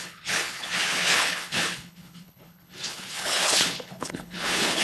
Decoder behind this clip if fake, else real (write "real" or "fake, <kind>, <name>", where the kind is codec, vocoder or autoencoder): fake, codec, HILCodec